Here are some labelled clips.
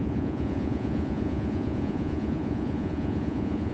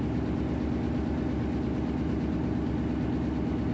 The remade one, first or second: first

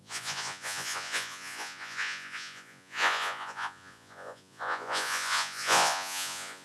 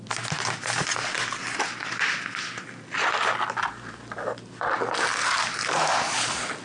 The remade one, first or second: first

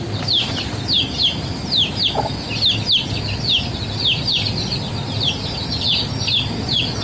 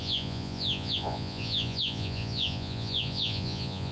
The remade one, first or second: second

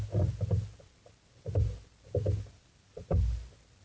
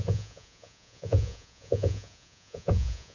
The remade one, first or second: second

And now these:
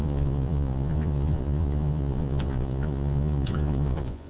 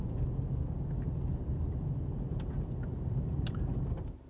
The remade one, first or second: first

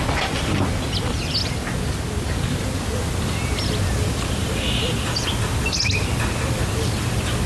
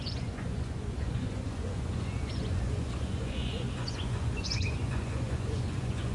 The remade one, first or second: second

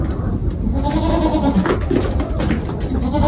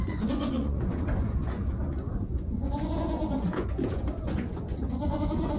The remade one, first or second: second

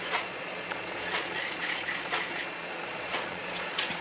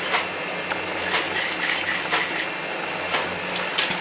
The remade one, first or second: first